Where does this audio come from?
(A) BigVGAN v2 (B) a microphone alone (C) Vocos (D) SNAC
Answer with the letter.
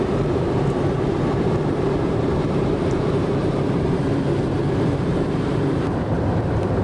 A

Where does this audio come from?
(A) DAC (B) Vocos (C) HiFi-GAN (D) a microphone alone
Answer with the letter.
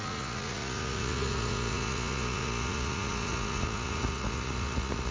B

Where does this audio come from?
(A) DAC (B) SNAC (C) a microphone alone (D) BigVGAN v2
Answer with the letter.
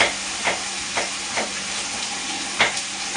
C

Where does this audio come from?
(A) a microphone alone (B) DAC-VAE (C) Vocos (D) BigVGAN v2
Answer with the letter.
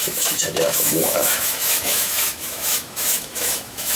B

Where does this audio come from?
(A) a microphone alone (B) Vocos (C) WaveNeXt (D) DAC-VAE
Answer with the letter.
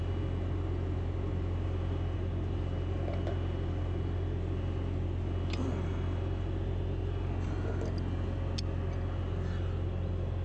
A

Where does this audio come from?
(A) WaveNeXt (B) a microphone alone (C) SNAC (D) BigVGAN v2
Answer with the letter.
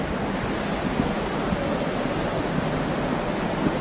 B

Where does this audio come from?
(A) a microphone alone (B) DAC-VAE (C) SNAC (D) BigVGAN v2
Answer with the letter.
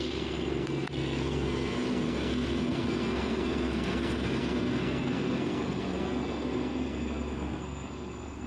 C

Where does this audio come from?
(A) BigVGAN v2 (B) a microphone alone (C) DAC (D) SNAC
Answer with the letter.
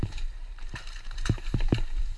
A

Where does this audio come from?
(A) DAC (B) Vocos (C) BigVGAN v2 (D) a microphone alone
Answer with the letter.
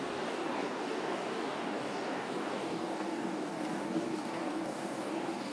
A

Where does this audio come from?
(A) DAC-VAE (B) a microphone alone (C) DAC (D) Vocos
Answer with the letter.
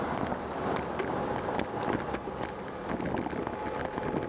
B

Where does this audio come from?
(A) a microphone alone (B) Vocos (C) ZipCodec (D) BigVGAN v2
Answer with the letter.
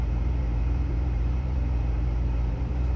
D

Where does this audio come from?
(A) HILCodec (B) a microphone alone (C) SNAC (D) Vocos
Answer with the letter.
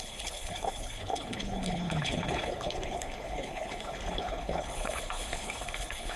A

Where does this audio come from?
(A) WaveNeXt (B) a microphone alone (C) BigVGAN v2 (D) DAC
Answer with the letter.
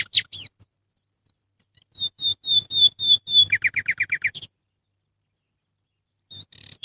C